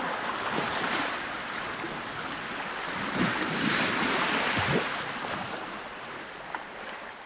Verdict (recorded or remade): recorded